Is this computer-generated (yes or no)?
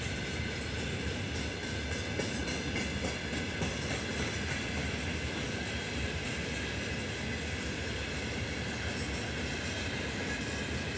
no